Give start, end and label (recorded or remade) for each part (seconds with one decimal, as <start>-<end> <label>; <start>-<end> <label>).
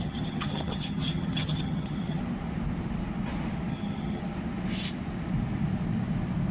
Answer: 0.0-2.2 remade; 2.2-3.7 recorded; 3.7-4.2 remade; 4.2-6.5 recorded